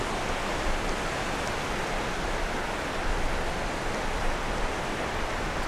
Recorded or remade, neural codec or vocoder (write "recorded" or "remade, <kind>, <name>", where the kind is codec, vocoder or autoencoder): recorded